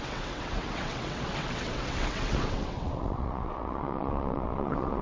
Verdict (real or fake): fake